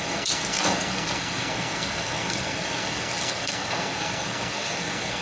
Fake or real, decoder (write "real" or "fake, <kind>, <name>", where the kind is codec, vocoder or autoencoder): fake, codec, SNAC